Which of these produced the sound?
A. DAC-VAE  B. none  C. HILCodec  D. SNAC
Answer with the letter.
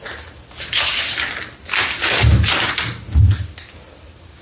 B